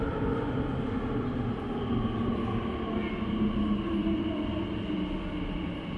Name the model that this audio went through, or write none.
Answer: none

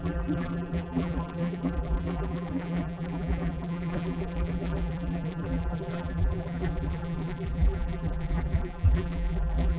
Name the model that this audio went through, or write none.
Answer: vocoder, BigVGAN v2